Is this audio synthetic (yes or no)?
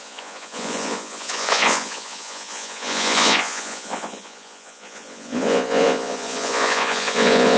yes